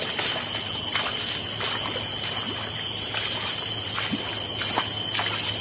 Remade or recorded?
recorded